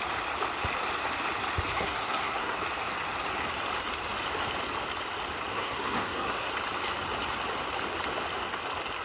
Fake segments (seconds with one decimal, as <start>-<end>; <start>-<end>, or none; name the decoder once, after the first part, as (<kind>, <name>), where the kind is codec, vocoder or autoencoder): 1.7-2.6 (codec, SNAC); 5.5-6.5